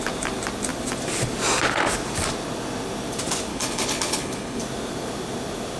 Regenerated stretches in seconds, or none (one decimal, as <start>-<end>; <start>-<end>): 3.5-4.6